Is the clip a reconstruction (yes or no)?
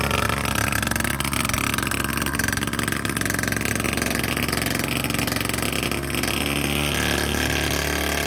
no